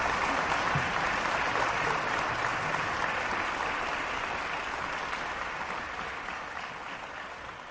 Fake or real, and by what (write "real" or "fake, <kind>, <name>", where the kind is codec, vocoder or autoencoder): real